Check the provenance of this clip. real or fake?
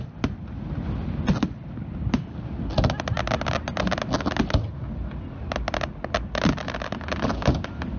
real